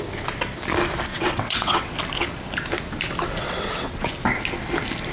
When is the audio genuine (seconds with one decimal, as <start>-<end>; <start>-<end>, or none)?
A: 0.0-1.1; 1.9-3.4; 4.1-5.1